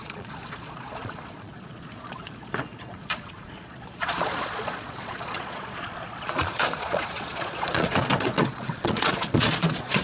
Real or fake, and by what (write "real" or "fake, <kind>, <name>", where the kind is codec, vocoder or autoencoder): fake, vocoder, Vocos